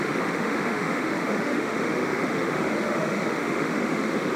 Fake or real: fake